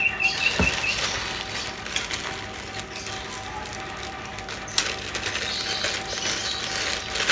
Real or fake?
real